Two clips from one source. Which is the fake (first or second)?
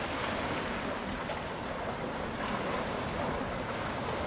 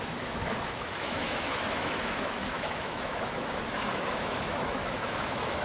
second